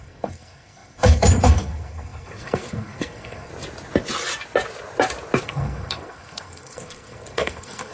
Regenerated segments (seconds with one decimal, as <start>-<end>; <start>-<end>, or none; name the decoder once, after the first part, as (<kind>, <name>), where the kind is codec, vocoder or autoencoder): 0.0-3.5 (codec, SNAC); 5.4-7.9